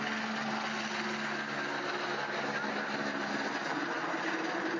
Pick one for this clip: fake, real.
real